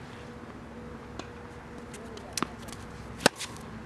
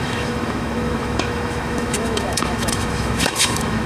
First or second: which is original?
first